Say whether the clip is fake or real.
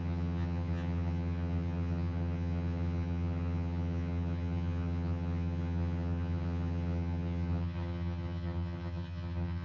fake